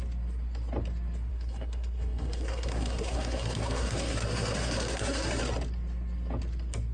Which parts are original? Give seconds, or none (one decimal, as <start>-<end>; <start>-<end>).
0.0-1.3; 5.4-6.9